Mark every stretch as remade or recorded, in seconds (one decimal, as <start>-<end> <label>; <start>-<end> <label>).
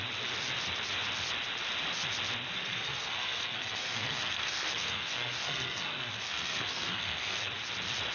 0.0-2.6 recorded; 2.6-7.5 remade; 7.5-8.1 recorded